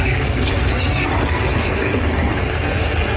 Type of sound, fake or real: fake